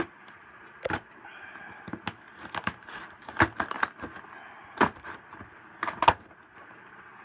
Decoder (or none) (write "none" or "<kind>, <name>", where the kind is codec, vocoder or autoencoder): none